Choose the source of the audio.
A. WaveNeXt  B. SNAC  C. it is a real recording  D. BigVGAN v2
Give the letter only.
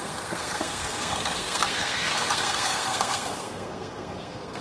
B